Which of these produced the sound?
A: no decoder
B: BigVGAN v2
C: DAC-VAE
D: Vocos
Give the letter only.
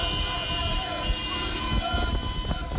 A